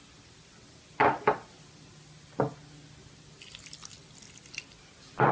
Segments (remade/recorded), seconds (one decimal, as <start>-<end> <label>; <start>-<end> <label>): 0.0-5.3 recorded